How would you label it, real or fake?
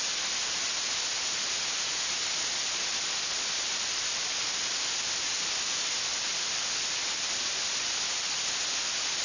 real